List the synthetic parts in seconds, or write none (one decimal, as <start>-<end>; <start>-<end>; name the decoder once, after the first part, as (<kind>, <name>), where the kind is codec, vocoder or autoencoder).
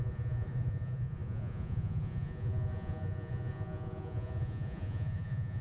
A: 0.0-5.6 (vocoder, Vocos)